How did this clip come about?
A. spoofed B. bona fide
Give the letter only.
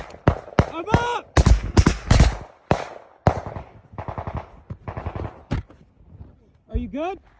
B